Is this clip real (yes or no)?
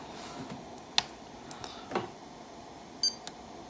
yes